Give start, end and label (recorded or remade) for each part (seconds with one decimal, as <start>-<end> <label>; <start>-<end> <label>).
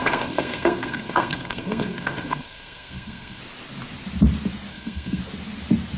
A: 0.0-3.4 remade; 3.4-4.7 recorded; 4.7-5.2 remade; 5.2-6.0 recorded